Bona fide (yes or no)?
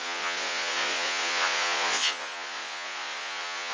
no